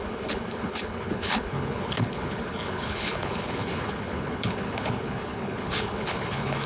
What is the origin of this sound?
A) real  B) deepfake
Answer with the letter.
B